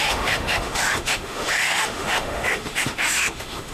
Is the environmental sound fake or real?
fake